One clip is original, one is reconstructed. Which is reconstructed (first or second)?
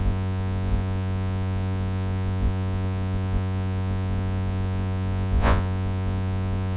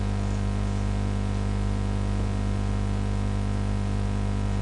first